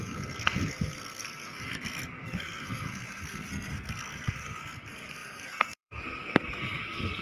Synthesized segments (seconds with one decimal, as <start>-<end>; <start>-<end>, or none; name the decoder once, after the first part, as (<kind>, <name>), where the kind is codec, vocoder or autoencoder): 0.0-7.2 (codec, SNAC)